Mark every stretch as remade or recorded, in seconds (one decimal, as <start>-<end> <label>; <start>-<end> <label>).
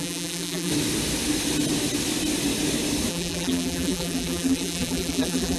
0.0-0.7 remade; 0.7-3.1 recorded; 3.1-5.6 remade